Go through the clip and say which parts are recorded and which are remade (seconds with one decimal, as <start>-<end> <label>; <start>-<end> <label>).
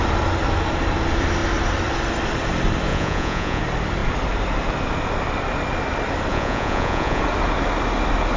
0.0-2.9 recorded; 2.9-3.6 remade; 3.6-6.3 recorded; 6.3-7.2 remade; 7.2-8.4 recorded